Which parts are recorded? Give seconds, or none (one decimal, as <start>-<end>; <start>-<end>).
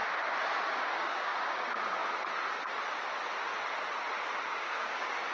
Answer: 0.0-0.7; 2.0-4.4